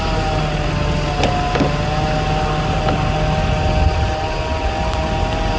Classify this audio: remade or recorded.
recorded